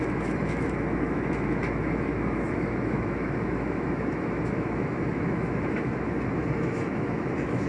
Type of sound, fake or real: fake